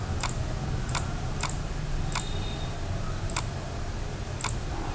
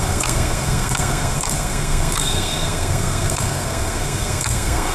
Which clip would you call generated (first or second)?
second